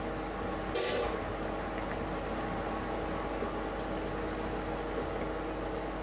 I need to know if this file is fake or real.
real